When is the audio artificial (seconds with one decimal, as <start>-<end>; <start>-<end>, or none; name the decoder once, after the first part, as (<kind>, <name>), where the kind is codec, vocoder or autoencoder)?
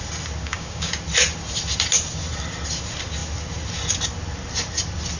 0.4-0.9 (codec, DAC)